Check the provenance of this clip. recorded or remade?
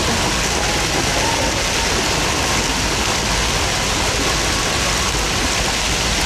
recorded